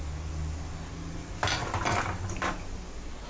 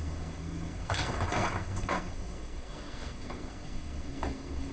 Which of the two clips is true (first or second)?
first